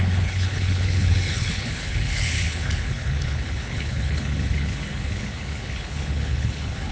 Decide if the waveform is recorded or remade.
remade